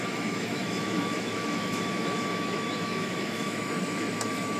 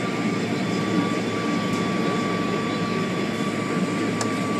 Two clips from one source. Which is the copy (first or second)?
first